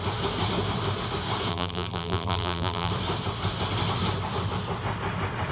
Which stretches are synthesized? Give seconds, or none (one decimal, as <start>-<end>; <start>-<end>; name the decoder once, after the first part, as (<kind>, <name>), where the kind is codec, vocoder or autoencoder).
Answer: 1.5-2.9 (vocoder, BigVGAN v2)